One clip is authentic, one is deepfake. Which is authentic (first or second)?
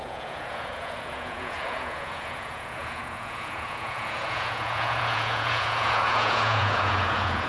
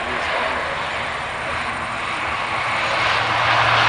second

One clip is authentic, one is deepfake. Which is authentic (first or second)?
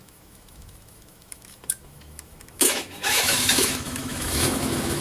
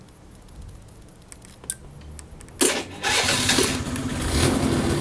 second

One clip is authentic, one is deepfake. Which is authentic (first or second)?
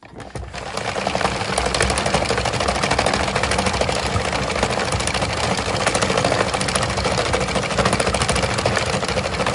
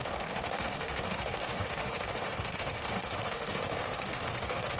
first